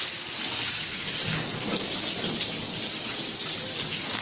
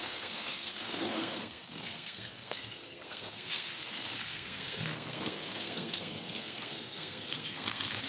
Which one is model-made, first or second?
second